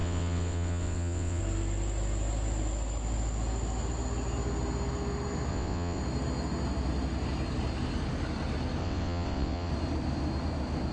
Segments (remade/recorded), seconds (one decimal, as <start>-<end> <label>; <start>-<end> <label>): 0.0-1.4 remade; 1.4-5.5 recorded; 5.5-6.0 remade; 6.0-8.8 recorded; 8.8-9.7 remade; 9.7-10.9 recorded